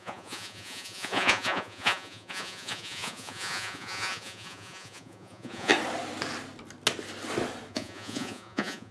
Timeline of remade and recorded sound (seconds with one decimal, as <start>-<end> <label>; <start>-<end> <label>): 0.0-5.7 remade; 5.7-7.7 recorded; 7.7-8.9 remade